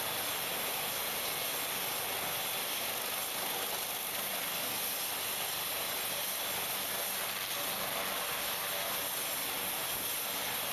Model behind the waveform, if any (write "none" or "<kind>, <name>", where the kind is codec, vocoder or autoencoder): none